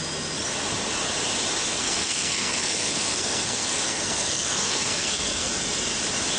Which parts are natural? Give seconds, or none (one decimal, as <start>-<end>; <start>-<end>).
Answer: 0.0-1.7; 5.5-6.4